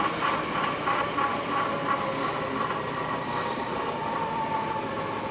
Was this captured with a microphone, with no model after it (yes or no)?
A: no